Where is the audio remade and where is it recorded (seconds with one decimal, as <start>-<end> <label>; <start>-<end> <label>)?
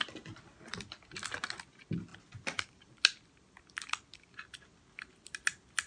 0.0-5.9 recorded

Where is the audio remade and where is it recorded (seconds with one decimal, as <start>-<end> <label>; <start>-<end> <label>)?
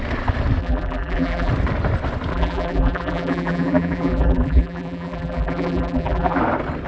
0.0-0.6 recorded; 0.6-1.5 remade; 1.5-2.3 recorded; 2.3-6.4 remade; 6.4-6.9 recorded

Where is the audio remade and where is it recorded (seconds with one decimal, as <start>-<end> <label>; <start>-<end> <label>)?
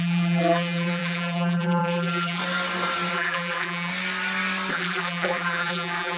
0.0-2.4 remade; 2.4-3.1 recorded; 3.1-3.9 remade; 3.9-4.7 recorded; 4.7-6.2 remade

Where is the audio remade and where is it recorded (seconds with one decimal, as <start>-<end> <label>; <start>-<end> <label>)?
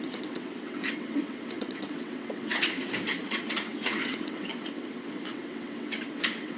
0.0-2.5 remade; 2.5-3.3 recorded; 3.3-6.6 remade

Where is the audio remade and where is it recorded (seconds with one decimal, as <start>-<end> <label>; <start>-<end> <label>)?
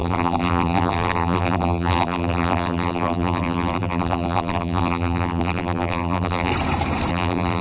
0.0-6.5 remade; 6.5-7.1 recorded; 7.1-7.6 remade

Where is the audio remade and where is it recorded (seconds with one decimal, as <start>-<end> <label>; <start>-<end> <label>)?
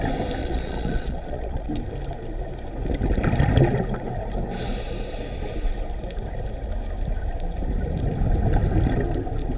0.0-0.4 recorded; 0.4-1.7 remade; 1.7-9.6 recorded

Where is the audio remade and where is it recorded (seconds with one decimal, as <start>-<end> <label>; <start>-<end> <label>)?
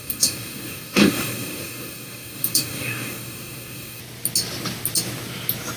0.0-4.0 remade; 4.0-5.8 recorded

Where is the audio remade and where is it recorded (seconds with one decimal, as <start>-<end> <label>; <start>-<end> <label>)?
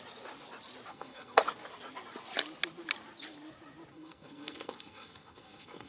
0.0-0.9 recorded; 0.9-1.4 remade; 1.4-3.9 recorded; 3.9-5.9 remade